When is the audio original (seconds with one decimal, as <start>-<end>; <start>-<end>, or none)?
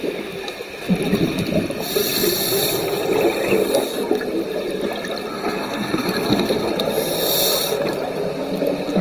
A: 0.0-5.3; 6.7-9.0